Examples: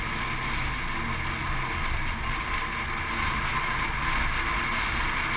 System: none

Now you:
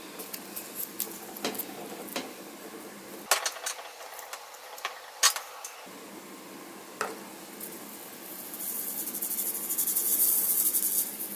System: none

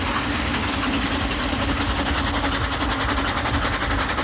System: none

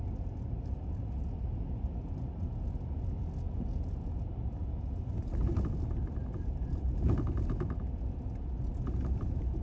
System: none